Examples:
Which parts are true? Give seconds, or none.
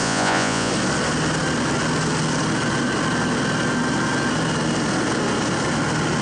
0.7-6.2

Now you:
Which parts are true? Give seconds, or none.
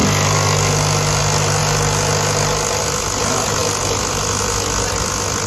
0.0-5.5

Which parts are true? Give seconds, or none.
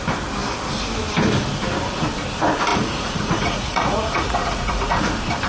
0.0-2.7; 5.0-5.5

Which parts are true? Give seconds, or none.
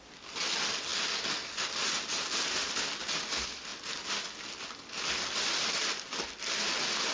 0.0-7.1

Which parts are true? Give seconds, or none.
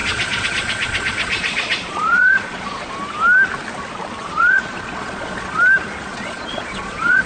2.9-4.2; 5.6-6.1